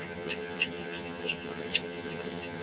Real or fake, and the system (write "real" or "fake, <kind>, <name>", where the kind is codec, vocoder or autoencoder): fake, vocoder, HiFi-GAN